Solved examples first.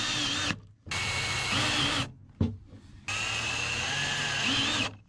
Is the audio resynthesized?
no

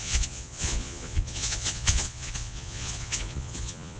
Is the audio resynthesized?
yes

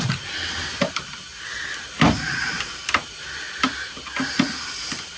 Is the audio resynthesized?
no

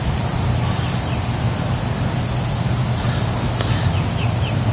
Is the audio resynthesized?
no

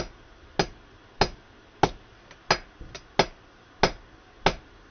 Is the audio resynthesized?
no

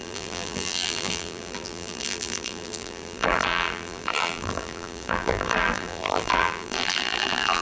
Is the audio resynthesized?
yes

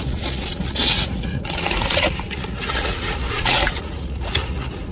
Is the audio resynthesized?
yes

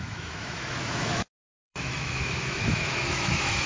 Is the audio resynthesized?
yes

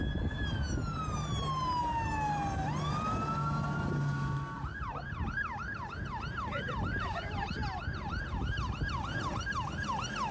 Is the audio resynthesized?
no